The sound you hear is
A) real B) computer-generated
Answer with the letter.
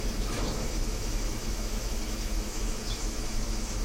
B